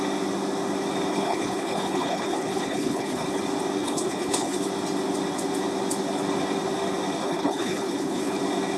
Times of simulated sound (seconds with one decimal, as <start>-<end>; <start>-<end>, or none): 1.1-3.4; 3.8-4.7; 7.2-8.4